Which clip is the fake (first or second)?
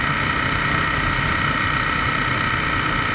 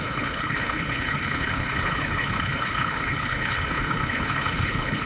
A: second